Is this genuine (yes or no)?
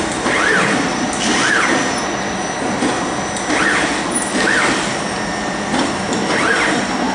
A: yes